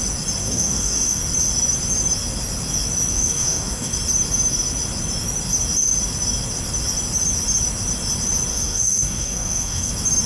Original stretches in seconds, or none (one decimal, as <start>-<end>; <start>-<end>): 0.0-0.4; 1.2-3.1; 3.9-8.5; 9.9-10.3